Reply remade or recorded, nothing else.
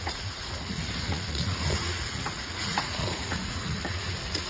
remade